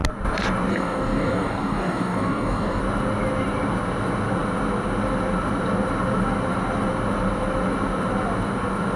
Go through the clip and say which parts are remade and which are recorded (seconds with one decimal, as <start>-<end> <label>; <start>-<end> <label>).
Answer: 0.0-0.7 recorded; 0.7-2.8 remade; 2.8-9.0 recorded